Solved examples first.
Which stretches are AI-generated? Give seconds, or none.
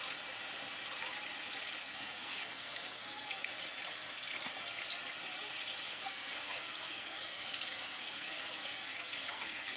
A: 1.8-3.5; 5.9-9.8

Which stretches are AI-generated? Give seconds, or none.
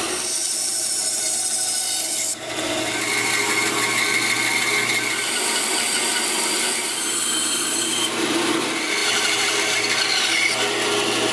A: 7.4-8.5; 9.0-10.0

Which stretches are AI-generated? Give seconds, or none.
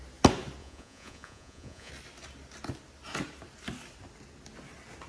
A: 0.6-1.9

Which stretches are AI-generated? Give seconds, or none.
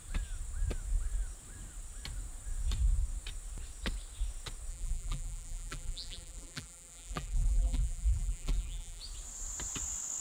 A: 4.7-9.0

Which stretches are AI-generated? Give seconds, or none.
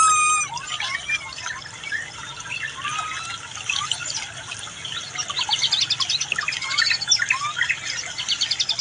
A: none